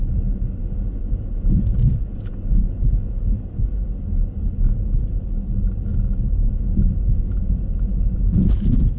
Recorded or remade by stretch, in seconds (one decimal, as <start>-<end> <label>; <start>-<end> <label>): 0.0-0.6 recorded; 0.6-3.2 remade; 3.2-5.9 recorded; 5.9-9.0 remade